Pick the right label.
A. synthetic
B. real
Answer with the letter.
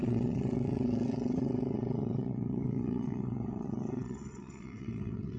A